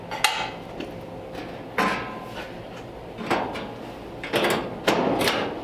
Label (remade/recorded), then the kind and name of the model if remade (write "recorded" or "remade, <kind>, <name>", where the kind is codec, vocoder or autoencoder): recorded